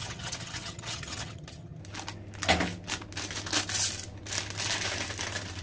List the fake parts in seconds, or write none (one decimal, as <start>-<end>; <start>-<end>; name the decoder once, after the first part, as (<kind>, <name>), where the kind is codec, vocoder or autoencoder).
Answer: 0.0-1.8 (vocoder, HiFi-GAN)